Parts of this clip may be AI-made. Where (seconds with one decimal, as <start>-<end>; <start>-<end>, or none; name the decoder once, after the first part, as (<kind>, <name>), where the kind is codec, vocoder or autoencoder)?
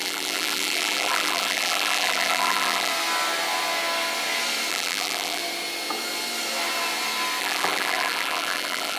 0.0-2.9 (vocoder, BigVGAN v2); 4.7-5.4; 7.4-9.0